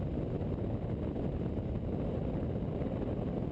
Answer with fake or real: real